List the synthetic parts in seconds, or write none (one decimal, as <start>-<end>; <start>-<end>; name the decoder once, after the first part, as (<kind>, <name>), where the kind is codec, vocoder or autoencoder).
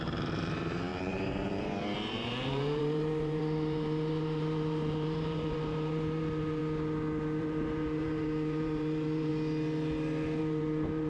0.0-6.6 (vocoder, BigVGAN v2); 7.4-9.3; 10.4-11.1